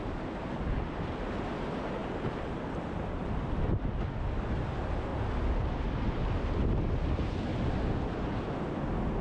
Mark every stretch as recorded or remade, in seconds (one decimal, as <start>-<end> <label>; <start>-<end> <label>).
0.0-9.2 recorded